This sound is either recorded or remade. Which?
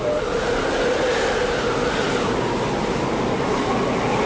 recorded